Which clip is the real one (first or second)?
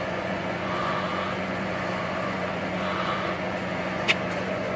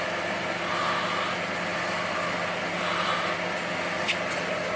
second